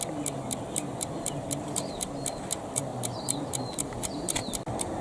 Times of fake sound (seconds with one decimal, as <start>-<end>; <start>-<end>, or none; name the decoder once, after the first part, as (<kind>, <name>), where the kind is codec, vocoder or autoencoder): none